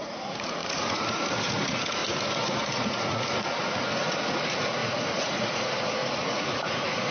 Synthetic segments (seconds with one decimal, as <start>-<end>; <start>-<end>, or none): 0.0-7.1